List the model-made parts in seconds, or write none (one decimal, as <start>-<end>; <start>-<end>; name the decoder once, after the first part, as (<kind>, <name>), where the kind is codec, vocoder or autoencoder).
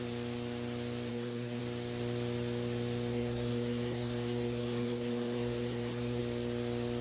1.1-1.6 (codec, SNAC); 3.1-6.2